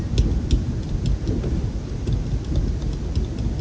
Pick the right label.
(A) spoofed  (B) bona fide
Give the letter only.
B